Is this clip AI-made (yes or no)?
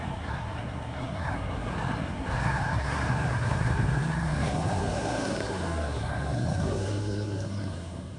yes